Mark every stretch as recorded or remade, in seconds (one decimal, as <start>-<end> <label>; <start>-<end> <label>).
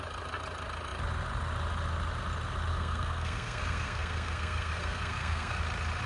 0.0-2.7 recorded; 2.7-5.6 remade; 5.6-6.1 recorded